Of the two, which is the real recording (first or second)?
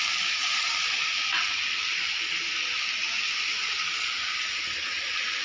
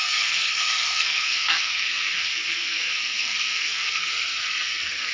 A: first